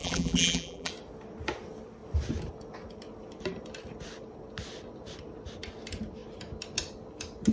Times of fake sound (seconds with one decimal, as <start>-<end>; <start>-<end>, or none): 0.0-0.9